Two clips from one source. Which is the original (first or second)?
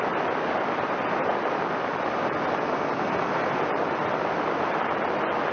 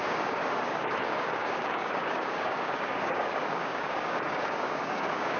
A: first